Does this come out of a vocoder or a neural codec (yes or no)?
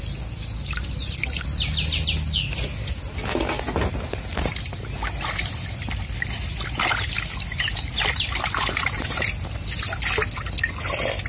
no